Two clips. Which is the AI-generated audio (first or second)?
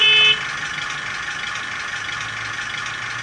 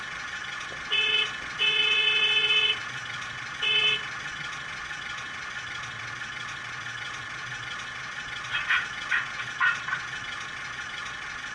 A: second